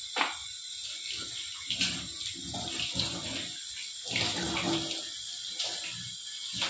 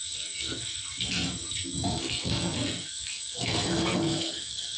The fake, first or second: second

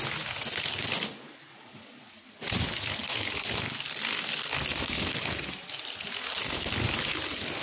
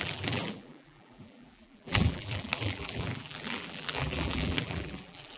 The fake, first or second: second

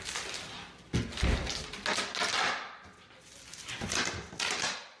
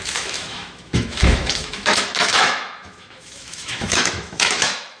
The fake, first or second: second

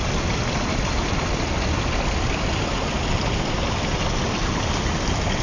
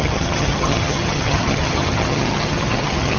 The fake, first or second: second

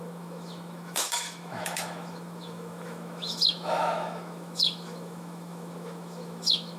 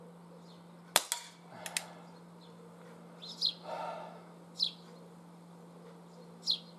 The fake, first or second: first